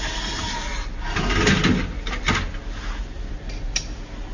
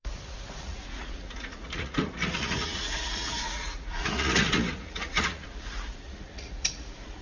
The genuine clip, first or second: first